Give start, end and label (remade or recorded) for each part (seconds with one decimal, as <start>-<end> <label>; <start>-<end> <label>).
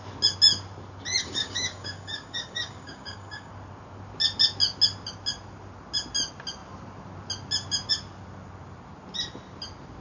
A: 0.0-1.2 recorded; 1.2-3.5 remade; 3.5-10.0 recorded